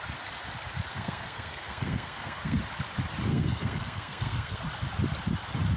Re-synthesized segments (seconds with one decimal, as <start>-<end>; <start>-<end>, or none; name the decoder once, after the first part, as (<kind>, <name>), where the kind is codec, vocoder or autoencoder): 0.9-2.6 (codec, SNAC); 3.3-4.6